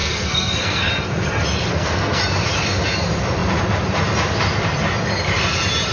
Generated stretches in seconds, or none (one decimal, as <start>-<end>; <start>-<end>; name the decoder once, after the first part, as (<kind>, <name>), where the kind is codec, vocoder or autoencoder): 0.0-0.9 (codec, SNAC); 1.7-2.2